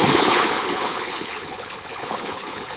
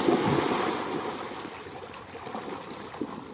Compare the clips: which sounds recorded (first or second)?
second